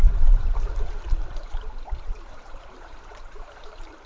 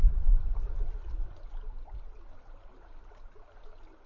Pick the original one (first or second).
second